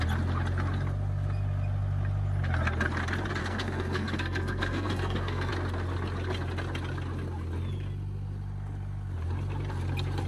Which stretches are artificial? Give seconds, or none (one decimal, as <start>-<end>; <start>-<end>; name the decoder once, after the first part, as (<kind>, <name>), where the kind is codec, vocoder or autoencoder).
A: 3.4-5.5 (codec, SNAC)